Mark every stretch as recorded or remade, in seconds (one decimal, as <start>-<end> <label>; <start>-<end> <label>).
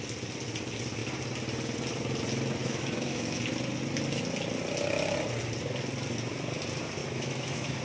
0.0-2.6 recorded; 2.6-3.4 remade; 3.4-7.0 recorded; 7.0-7.8 remade